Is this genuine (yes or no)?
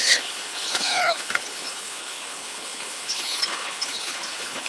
no